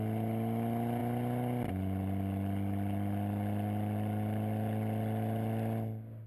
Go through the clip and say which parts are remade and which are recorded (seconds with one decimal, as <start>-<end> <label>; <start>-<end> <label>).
0.0-6.3 recorded